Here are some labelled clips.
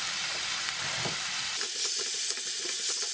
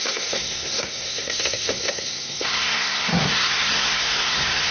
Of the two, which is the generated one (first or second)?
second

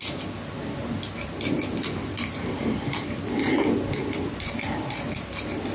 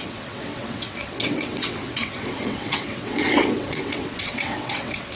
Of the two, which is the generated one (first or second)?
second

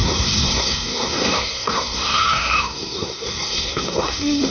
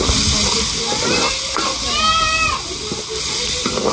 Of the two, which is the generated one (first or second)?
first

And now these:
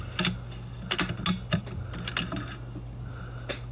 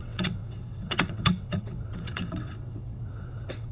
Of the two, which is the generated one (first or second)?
second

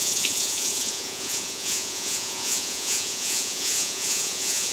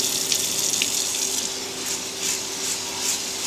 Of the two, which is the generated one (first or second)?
first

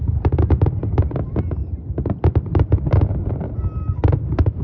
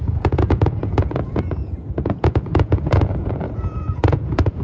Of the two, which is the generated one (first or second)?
second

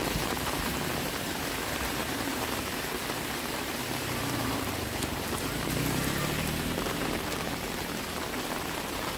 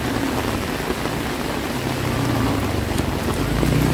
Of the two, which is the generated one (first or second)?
first